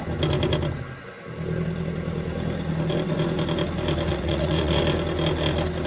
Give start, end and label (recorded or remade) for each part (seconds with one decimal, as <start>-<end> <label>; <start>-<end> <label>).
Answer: 0.0-4.1 recorded; 4.1-4.8 remade; 4.8-5.9 recorded